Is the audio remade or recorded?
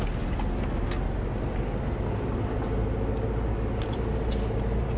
recorded